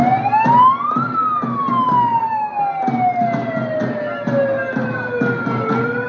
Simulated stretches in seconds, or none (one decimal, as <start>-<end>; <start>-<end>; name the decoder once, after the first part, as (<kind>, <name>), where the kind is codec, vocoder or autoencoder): none